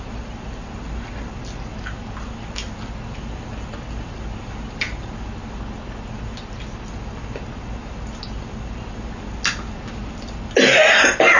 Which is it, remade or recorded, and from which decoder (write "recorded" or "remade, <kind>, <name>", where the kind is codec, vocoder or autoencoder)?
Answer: recorded